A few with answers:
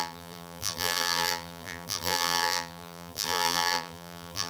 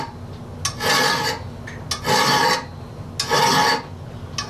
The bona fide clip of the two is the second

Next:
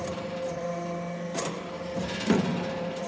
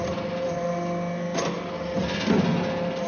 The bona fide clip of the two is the second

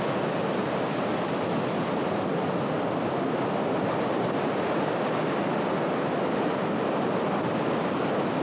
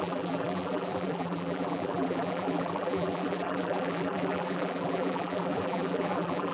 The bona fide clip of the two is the first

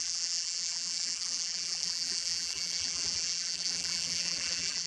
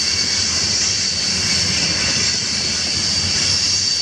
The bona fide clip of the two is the second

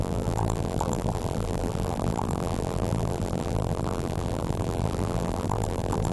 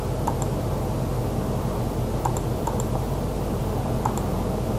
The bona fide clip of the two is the second